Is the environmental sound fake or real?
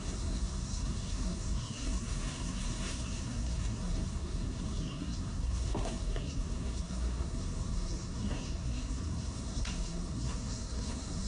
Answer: fake